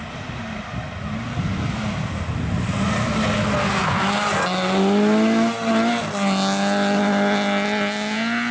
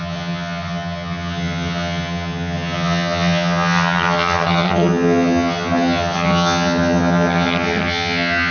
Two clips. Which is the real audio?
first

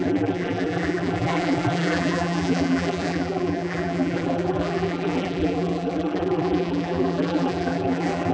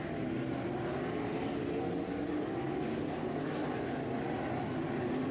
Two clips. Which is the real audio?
second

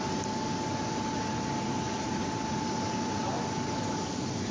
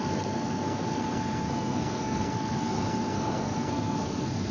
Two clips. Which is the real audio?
first